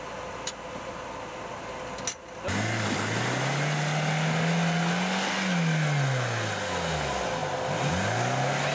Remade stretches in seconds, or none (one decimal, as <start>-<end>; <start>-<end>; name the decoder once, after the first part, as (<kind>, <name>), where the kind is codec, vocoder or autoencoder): none